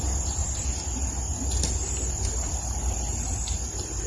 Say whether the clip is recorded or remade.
recorded